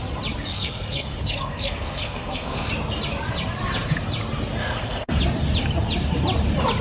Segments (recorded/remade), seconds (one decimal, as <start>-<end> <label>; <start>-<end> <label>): 0.0-0.5 recorded; 0.5-2.7 remade; 2.7-4.6 recorded; 4.6-5.2 remade; 5.2-6.8 recorded